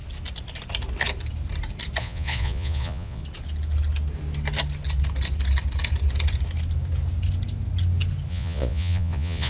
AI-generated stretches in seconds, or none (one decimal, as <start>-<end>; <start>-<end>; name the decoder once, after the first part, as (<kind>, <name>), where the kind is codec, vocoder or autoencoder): 2.0-3.2 (vocoder, Vocos); 8.3-9.5